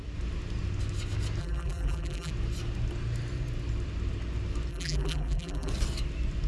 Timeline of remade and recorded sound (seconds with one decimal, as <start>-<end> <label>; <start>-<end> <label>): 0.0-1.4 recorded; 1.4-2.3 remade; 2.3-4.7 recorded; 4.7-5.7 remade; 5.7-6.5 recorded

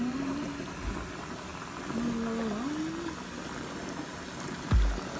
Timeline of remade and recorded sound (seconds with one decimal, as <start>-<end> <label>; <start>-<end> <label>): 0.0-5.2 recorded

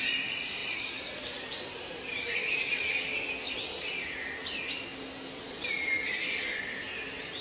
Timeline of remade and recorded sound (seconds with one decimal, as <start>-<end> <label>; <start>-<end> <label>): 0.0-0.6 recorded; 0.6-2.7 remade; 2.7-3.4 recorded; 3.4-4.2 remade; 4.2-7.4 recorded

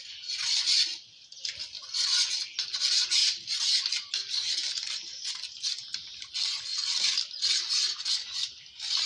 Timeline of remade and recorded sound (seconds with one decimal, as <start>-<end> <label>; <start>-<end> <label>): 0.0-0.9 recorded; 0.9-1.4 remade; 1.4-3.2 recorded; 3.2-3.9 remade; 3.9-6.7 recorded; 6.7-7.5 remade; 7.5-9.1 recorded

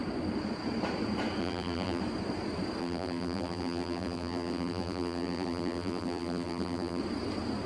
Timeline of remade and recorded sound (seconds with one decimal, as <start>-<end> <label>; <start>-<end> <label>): 0.0-1.4 recorded; 1.4-2.0 remade; 2.0-2.8 recorded; 2.8-7.0 remade; 7.0-7.7 recorded

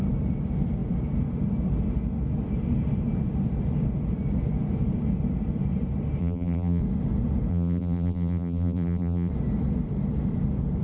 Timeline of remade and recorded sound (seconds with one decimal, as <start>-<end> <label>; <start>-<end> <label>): 0.0-6.2 recorded; 6.2-6.8 remade; 6.8-7.5 recorded; 7.5-9.3 remade; 9.3-10.8 recorded

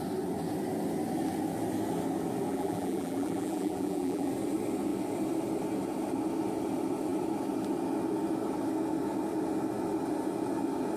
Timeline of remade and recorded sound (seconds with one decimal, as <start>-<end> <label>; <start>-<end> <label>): 0.0-2.5 recorded; 2.5-4.3 remade; 4.3-11.0 recorded

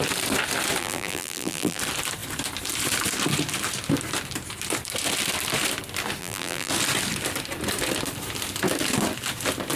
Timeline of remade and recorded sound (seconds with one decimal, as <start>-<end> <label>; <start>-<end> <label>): 0.0-0.8 recorded; 0.8-1.8 remade; 1.8-6.2 recorded; 6.2-6.7 remade; 6.7-9.8 recorded